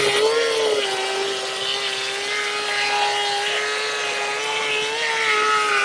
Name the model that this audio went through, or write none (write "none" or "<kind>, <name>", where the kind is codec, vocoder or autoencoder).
none